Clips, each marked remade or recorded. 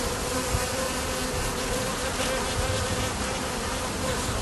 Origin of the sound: recorded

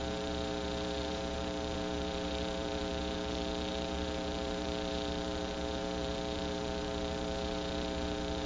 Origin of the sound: remade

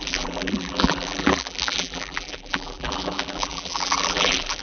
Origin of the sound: remade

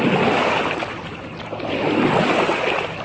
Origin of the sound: recorded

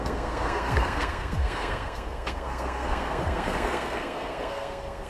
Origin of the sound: remade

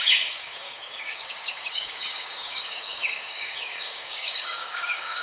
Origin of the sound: remade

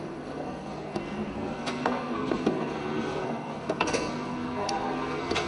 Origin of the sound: remade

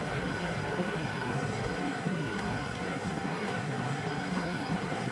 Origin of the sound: remade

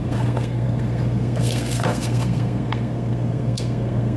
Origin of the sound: remade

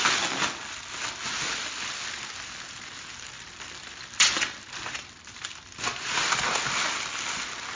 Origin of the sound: recorded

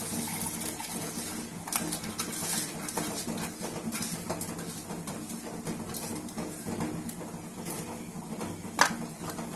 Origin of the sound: recorded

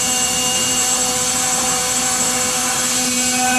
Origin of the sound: remade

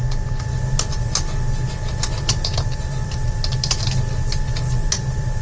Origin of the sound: recorded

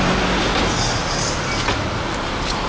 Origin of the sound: recorded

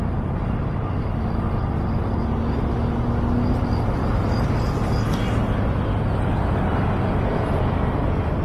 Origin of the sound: recorded